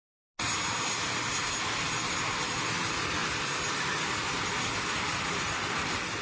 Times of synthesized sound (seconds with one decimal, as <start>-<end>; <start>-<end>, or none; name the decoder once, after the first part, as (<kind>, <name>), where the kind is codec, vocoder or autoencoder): none